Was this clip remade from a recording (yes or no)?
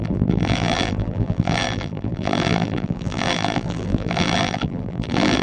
yes